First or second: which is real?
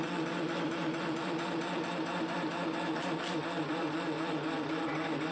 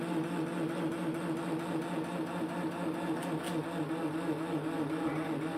second